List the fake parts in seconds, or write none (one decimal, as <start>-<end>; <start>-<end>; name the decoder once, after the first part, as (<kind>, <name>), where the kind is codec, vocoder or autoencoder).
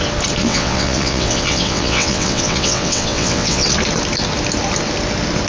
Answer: 0.4-3.7 (vocoder, WaveNeXt)